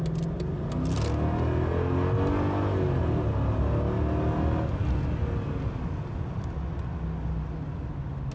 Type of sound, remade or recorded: recorded